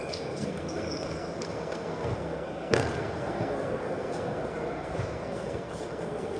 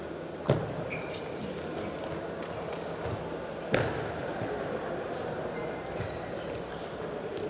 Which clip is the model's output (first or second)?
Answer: first